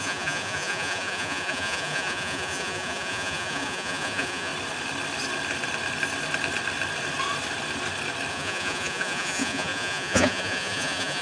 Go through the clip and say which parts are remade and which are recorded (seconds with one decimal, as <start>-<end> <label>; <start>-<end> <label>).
0.0-4.5 remade; 4.5-8.3 recorded; 8.3-11.2 remade